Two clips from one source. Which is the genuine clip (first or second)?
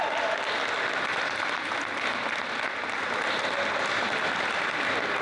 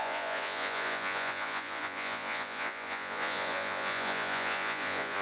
first